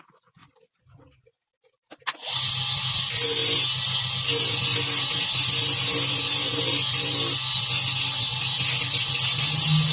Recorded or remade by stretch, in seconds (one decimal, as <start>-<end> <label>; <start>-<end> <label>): 0.0-9.9 recorded